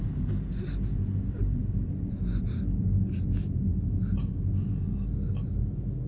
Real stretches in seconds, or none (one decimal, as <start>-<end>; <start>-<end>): 0.0-6.1